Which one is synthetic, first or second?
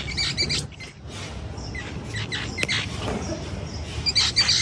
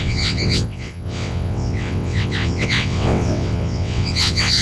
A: second